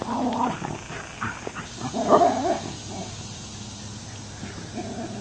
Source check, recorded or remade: recorded